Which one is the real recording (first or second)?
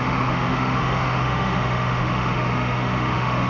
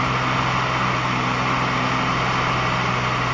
second